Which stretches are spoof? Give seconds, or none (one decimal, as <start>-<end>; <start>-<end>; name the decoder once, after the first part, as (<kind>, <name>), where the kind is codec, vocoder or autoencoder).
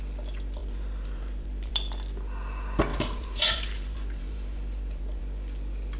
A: 0.6-1.7 (vocoder, BigVGAN v2); 2.9-5.2